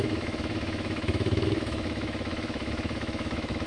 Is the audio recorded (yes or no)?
no